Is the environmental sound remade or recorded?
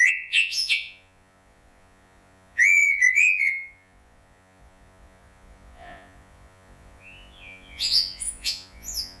remade